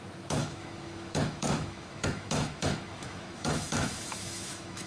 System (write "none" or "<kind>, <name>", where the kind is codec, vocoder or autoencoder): autoencoder, DAC-VAE